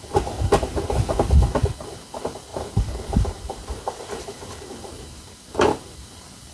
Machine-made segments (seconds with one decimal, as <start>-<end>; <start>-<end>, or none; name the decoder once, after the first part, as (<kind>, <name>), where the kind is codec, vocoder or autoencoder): 0.0-0.9 (vocoder, BigVGAN v2); 2.5-6.1